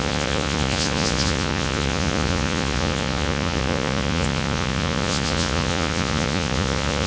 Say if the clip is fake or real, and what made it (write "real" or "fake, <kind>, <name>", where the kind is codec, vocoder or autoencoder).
fake, vocoder, Vocos